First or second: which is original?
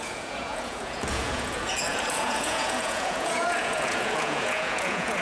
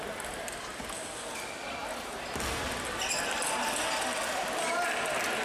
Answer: second